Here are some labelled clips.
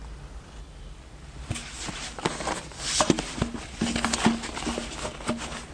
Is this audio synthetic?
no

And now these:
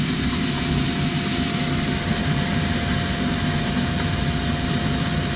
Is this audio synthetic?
no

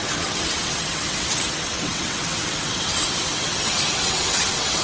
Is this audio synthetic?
yes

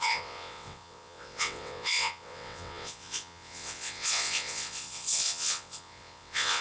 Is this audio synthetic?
yes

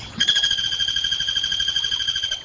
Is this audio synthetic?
yes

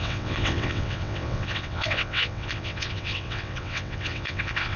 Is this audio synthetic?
yes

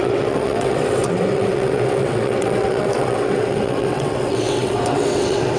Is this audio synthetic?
yes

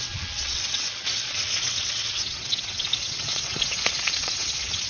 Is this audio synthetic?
yes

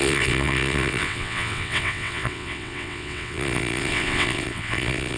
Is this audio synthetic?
yes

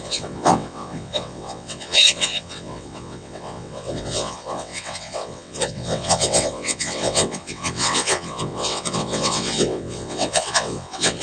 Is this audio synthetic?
yes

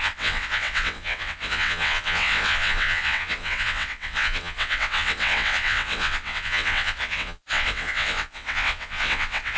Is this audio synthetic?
yes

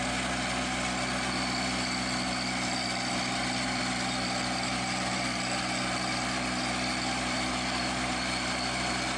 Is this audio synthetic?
no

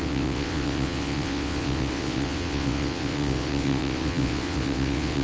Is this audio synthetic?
yes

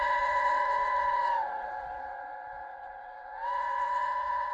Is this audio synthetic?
yes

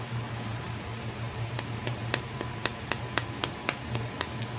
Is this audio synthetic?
no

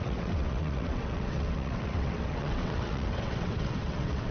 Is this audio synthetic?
yes